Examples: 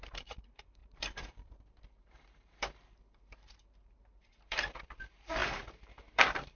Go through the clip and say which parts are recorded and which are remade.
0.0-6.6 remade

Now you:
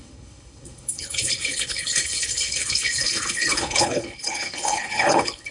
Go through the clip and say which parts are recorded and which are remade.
0.0-5.5 remade

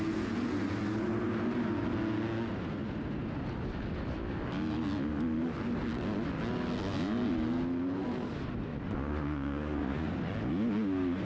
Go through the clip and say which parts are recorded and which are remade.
0.0-8.7 recorded; 8.7-10.1 remade; 10.1-11.2 recorded

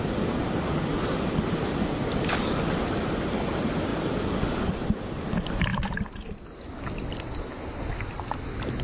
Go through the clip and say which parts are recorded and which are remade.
0.0-8.8 recorded

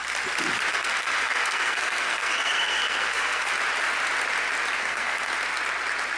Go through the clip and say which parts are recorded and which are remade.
0.0-0.7 recorded; 0.7-3.5 remade; 3.5-4.8 recorded; 4.8-5.3 remade; 5.3-6.2 recorded

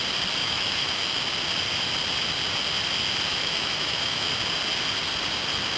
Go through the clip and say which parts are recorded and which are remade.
0.0-0.4 recorded; 0.4-1.2 remade; 1.2-3.3 recorded; 3.3-4.3 remade; 4.3-5.8 recorded

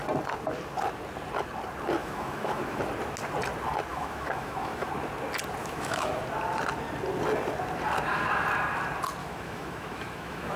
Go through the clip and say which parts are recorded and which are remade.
0.0-2.0 recorded; 2.0-2.8 remade; 2.8-3.9 recorded; 3.9-4.9 remade; 4.9-5.6 recorded; 5.6-6.2 remade; 6.2-9.2 recorded; 9.2-10.6 remade